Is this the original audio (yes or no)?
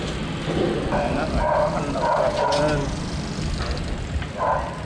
yes